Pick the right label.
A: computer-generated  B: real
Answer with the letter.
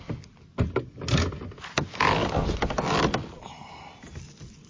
B